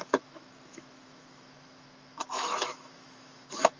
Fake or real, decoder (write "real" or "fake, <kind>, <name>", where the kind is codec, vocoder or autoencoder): fake, autoencoder, DAC-VAE